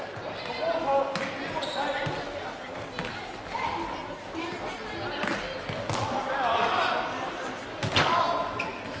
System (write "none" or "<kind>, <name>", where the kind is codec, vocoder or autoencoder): none